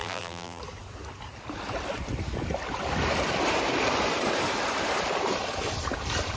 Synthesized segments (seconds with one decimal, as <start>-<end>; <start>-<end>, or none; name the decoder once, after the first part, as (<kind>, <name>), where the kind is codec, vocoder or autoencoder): 0.0-0.6 (vocoder, BigVGAN v2)